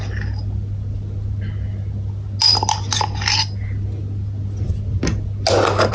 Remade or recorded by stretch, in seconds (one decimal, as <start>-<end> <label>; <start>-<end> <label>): 0.0-5.9 recorded